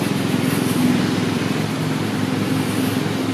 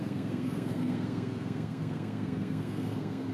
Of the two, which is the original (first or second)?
first